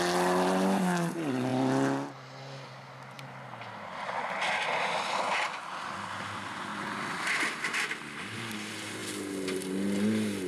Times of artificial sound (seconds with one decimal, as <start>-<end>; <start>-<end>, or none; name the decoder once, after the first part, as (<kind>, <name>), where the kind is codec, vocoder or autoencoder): none